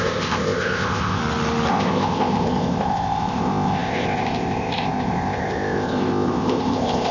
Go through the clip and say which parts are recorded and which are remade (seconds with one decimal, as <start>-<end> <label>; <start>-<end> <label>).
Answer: 0.0-1.2 remade; 1.2-1.7 recorded; 1.7-7.1 remade